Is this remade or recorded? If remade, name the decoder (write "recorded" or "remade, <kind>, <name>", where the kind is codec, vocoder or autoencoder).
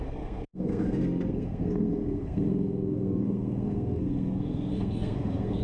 remade, codec, SNAC